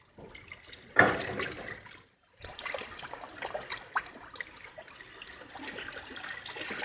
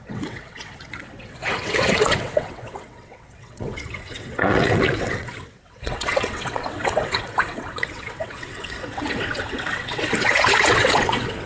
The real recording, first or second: first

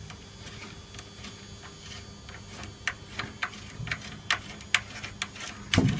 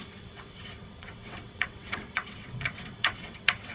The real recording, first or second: first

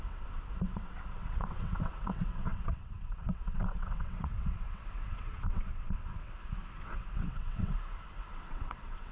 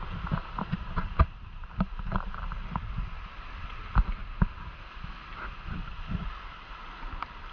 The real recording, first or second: second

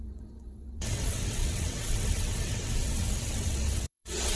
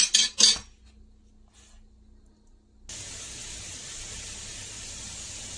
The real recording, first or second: second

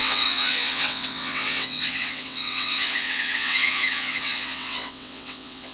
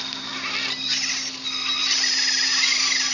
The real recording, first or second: second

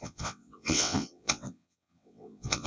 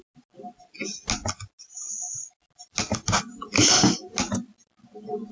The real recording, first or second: second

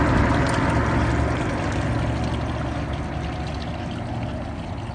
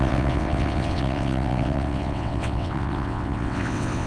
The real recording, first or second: first